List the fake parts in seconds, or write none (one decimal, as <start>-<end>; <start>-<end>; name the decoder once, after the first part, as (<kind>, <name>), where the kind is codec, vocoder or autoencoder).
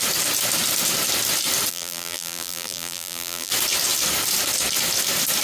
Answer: 1.7-3.5 (vocoder, BigVGAN v2)